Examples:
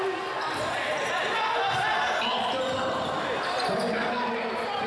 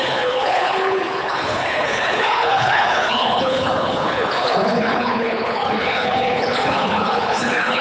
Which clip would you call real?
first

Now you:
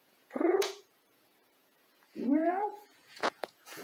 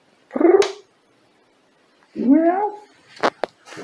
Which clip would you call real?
second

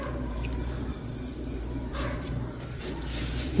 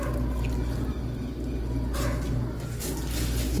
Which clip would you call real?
second